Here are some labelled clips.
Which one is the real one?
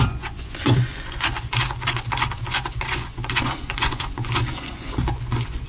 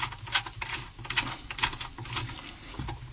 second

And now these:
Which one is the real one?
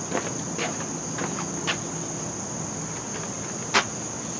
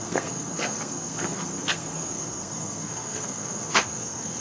first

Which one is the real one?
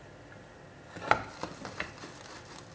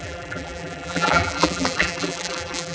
first